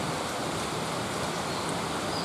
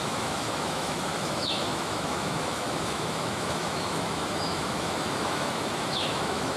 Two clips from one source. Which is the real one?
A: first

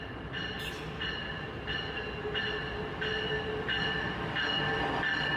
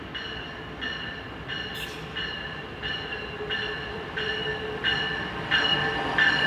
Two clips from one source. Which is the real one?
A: first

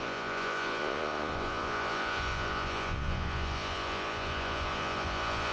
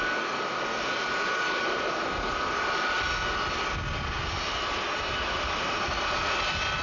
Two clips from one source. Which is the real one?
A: second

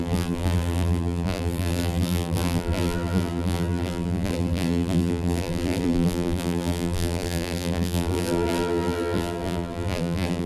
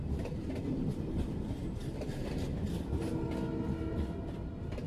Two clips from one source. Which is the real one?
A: second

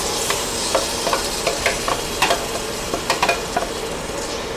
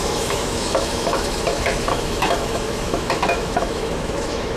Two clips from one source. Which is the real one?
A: first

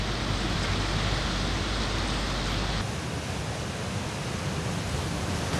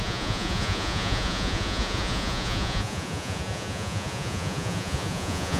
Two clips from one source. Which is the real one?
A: first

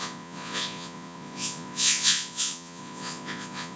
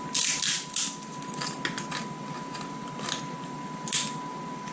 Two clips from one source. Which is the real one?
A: second